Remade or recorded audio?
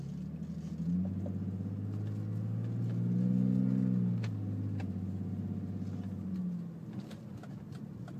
recorded